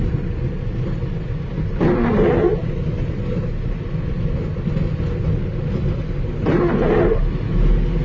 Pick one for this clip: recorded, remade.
recorded